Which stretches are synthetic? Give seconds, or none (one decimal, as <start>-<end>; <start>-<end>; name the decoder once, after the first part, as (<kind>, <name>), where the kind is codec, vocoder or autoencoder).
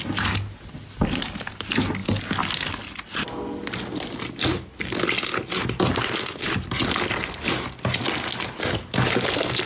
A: none